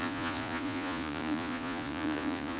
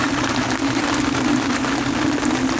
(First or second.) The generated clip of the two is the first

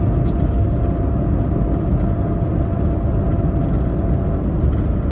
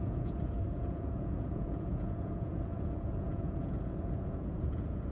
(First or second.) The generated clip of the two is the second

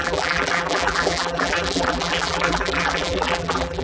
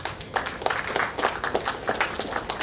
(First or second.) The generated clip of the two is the first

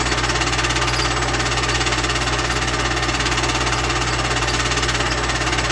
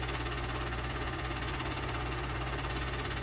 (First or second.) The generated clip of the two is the second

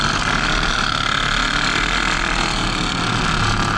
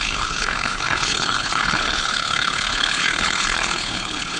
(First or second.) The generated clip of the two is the second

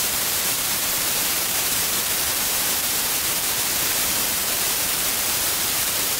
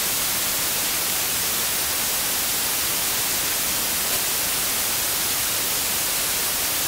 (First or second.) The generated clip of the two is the first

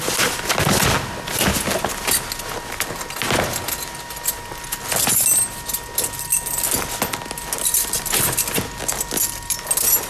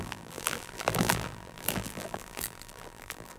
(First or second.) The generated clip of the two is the second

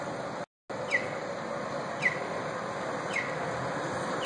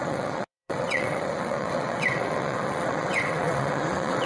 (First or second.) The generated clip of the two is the second